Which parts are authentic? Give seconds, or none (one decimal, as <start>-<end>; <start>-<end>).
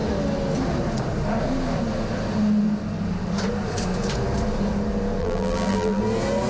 0.0-5.2; 6.0-6.5